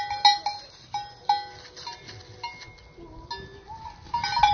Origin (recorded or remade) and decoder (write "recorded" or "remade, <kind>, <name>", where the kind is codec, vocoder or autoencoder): recorded